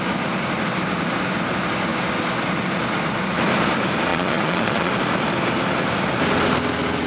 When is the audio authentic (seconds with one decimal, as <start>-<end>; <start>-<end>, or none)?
0.0-4.1; 4.9-7.1